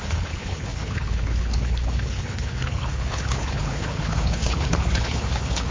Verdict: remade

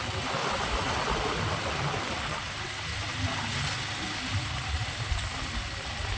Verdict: recorded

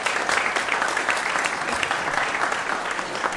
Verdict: recorded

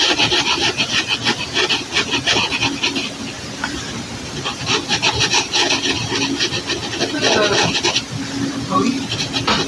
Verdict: recorded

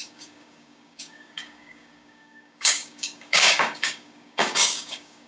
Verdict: remade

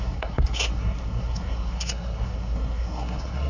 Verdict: remade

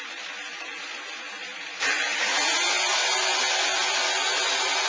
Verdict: recorded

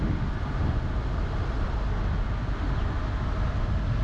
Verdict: recorded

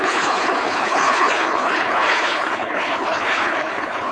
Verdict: remade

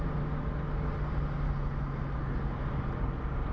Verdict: recorded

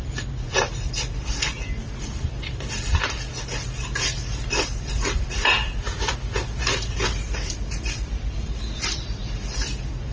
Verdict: remade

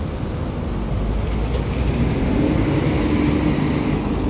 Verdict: recorded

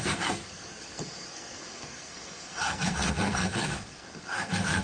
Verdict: remade